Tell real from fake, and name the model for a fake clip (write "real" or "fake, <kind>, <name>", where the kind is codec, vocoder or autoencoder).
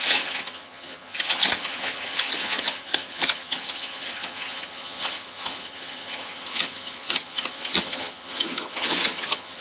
fake, vocoder, HiFi-GAN